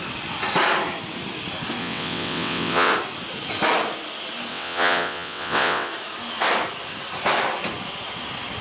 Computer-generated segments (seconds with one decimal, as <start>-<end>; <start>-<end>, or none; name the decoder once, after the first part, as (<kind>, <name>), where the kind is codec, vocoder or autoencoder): 1.8-2.9 (vocoder, WaveNeXt); 4.5-5.9